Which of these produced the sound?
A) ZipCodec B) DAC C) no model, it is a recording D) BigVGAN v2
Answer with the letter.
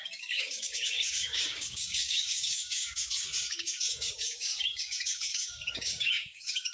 B